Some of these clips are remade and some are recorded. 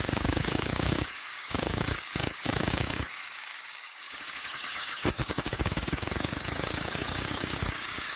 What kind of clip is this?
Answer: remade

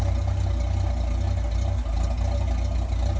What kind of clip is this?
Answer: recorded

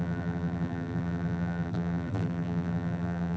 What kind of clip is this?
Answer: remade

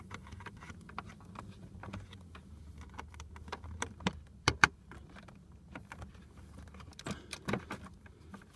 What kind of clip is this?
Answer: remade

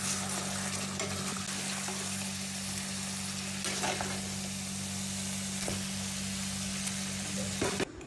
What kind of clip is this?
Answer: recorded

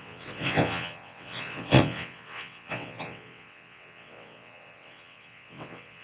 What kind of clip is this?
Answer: remade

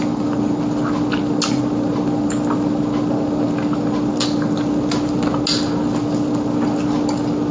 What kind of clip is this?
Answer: recorded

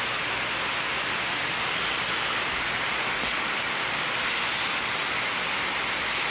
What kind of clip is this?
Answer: recorded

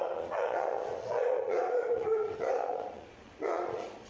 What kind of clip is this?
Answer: remade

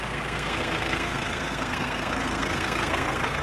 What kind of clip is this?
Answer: remade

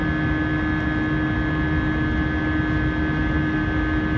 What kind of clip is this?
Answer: recorded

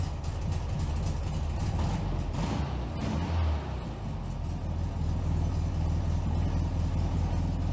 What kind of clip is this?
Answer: recorded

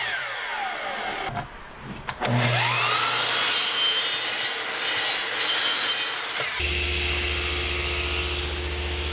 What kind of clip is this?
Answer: recorded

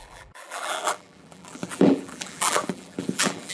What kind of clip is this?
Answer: remade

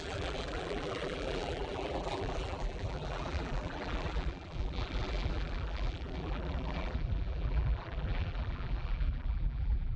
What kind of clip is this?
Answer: remade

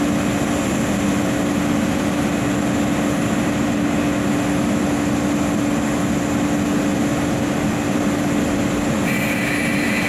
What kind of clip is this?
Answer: recorded